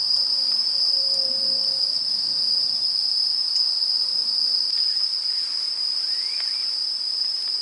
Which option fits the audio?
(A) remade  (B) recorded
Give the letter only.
A